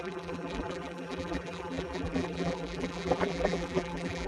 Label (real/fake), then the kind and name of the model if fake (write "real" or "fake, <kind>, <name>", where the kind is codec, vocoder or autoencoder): fake, vocoder, BigVGAN v2